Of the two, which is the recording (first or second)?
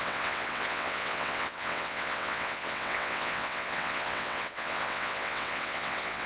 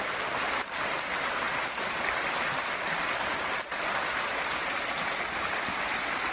second